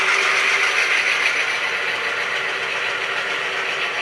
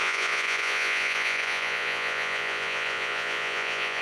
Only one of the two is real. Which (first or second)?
first